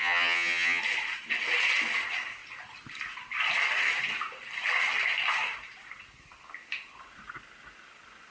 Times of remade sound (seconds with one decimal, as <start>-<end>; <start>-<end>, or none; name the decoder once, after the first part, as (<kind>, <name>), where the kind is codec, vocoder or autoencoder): 0.0-0.8 (vocoder, HiFi-GAN)